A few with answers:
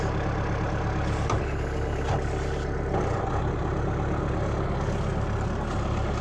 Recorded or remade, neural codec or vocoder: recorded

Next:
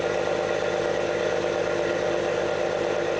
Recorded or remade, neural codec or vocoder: recorded